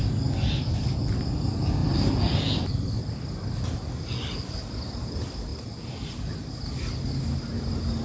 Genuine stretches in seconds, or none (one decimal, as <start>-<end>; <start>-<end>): 0.0-8.0